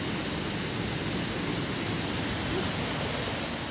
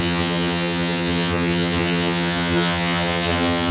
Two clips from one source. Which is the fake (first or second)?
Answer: second